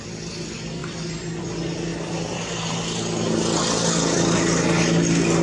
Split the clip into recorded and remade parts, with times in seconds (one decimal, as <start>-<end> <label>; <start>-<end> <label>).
0.0-5.4 recorded